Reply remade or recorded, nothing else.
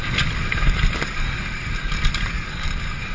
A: recorded